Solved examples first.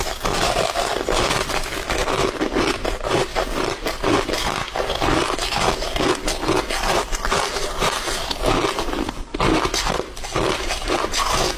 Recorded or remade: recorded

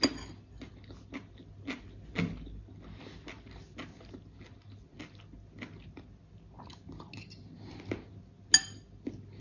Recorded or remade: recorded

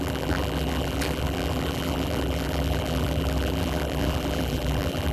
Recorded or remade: remade